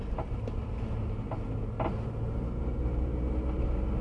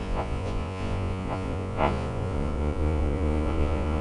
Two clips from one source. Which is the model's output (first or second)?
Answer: second